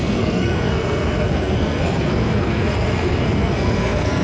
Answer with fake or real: fake